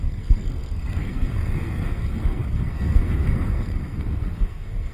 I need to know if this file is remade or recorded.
remade